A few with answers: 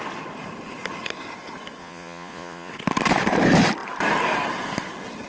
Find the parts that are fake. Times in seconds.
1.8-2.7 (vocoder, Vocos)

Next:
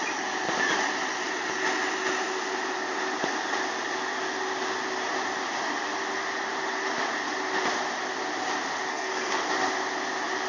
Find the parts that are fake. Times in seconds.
8.9-9.5 (codec, SNAC)

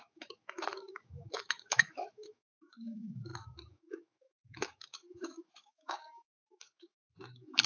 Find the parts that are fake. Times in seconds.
0.0-7.7 (autoencoder, DAC-VAE)